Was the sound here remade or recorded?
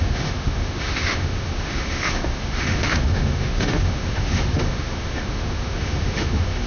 remade